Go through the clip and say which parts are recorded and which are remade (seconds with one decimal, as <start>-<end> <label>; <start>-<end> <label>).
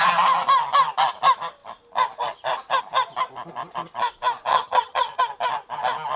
0.0-4.5 recorded; 4.5-5.2 remade; 5.2-6.2 recorded